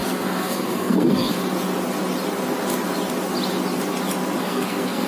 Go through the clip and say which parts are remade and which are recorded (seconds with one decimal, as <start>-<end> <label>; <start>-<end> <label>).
0.0-1.3 remade; 1.3-4.4 recorded; 4.4-5.1 remade